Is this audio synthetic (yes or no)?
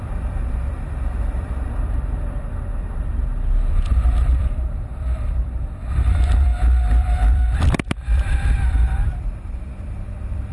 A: yes